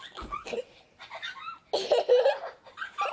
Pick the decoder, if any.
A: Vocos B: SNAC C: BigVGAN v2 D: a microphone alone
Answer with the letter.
D